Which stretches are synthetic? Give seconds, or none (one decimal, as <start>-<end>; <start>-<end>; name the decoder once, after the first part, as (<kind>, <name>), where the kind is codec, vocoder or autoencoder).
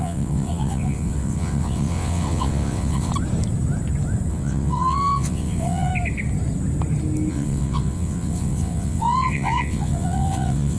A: 0.0-3.1 (vocoder, WaveNeXt); 4.3-5.9; 7.3-10.8